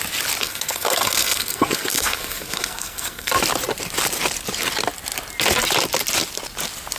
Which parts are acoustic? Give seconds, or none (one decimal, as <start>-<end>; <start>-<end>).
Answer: 0.0-0.4; 3.3-7.0